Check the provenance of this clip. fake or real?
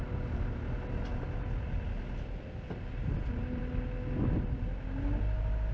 real